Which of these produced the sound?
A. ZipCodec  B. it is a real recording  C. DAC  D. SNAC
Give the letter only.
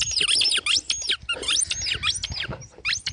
B